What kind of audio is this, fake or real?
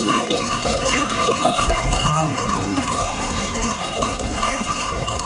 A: fake